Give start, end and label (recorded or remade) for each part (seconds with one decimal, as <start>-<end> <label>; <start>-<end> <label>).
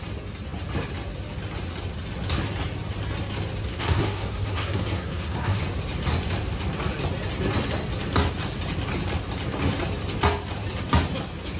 0.0-3.7 recorded; 3.7-5.6 remade; 5.6-11.6 recorded